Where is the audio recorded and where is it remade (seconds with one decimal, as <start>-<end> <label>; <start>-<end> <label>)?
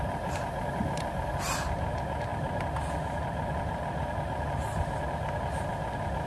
0.0-6.3 recorded